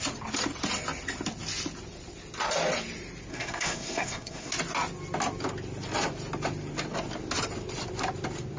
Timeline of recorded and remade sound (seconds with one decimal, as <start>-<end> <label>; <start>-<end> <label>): 0.0-3.3 recorded; 3.3-4.5 remade; 4.5-8.6 recorded